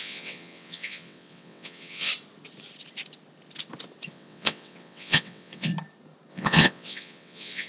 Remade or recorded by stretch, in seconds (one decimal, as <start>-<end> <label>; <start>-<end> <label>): 0.0-2.1 remade; 2.1-4.1 recorded; 4.1-5.7 remade; 5.7-6.3 recorded; 6.3-7.7 remade